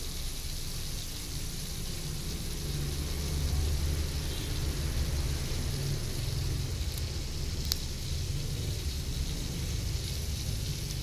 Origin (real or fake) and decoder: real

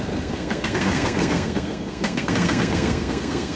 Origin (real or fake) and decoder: fake, codec, SNAC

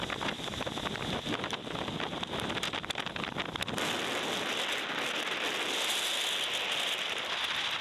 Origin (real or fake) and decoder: real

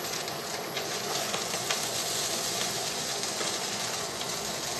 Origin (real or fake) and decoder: fake, vocoder, Vocos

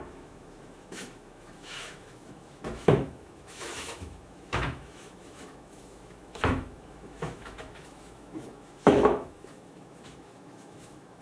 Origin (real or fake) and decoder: fake, autoencoder, DAC-VAE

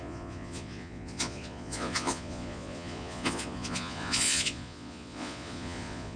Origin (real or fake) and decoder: fake, vocoder, Vocos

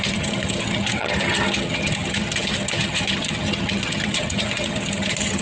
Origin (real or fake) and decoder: fake, vocoder, HiFi-GAN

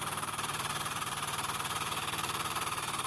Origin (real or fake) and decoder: fake, vocoder, BigVGAN v2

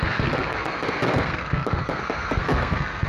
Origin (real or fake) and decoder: fake, codec, SNAC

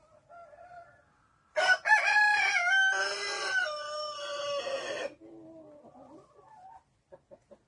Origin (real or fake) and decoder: real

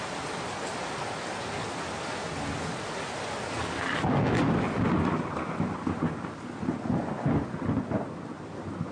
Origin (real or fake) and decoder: real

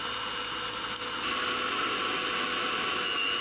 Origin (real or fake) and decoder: real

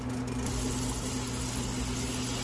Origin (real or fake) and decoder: real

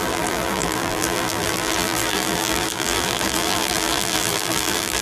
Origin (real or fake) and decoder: fake, vocoder, BigVGAN v2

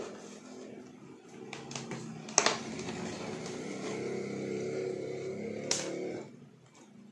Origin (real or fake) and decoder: real